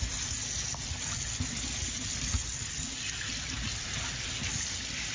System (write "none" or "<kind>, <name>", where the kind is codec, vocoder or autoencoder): none